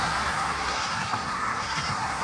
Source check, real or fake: fake